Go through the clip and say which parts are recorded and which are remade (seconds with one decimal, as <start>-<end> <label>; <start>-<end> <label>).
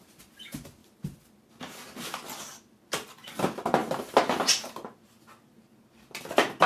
0.0-6.7 recorded